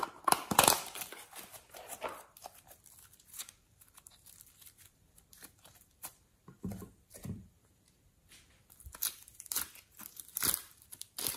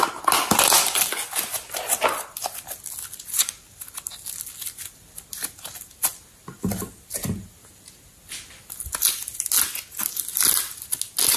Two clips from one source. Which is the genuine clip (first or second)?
second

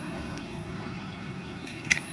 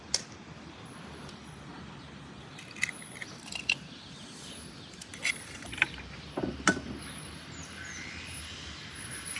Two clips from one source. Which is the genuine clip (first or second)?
second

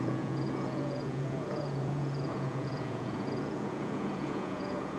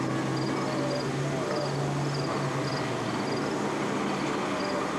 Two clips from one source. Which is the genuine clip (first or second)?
second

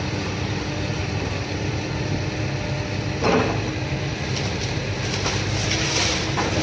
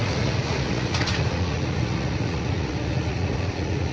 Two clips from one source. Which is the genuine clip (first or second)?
first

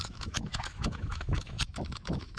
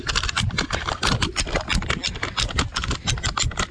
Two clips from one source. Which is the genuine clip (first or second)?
second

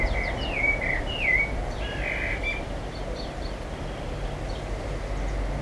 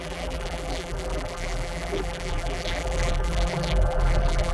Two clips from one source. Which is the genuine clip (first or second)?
first